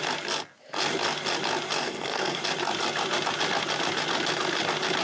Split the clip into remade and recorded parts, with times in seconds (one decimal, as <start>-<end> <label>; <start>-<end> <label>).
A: 0.0-1.8 recorded; 1.8-2.4 remade; 2.4-5.0 recorded